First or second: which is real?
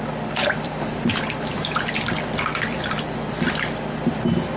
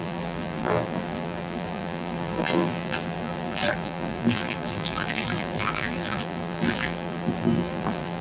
first